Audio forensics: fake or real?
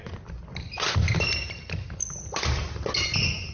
real